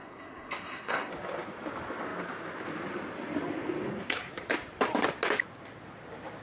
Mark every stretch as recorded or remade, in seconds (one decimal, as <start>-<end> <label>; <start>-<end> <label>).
0.0-1.1 remade; 1.1-6.4 recorded